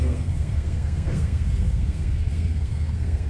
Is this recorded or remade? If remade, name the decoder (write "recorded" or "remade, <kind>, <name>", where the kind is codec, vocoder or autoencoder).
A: remade, codec, SNAC